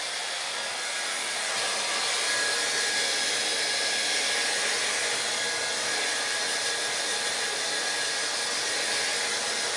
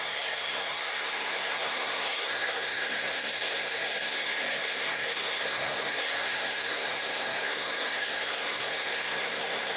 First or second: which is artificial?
second